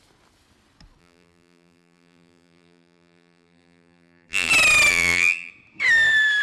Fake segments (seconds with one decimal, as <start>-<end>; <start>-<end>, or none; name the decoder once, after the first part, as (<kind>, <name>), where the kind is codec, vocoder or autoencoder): 1.0-4.5 (vocoder, BigVGAN v2); 4.9-5.5